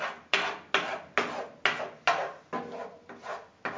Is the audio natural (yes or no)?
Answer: yes